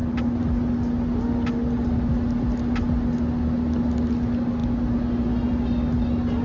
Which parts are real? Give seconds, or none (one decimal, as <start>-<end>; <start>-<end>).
0.0-6.4